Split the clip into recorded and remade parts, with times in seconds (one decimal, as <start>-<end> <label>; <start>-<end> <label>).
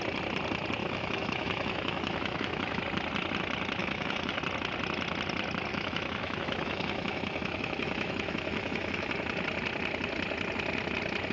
0.0-0.8 recorded; 0.8-2.8 remade; 2.8-3.8 recorded; 3.8-4.4 remade; 4.4-5.7 recorded; 5.7-9.1 remade; 9.1-11.3 recorded